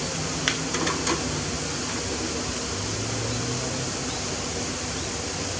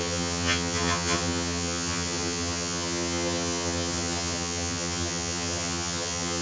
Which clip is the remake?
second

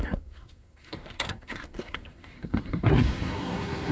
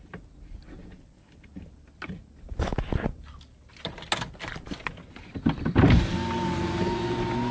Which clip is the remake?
first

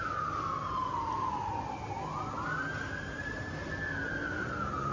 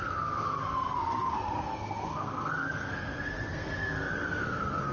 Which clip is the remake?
second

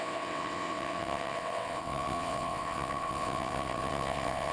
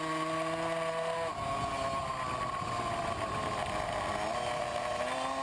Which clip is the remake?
first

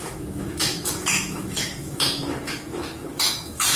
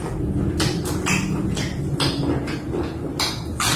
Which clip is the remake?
first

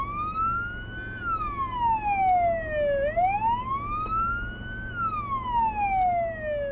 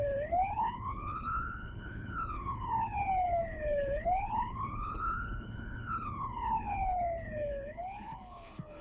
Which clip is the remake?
second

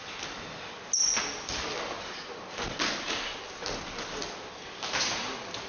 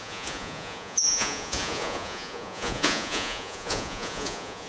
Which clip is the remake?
second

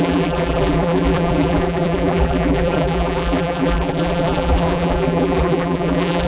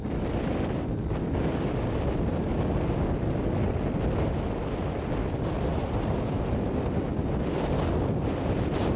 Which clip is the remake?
first